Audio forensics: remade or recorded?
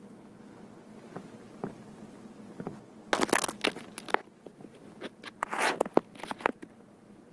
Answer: recorded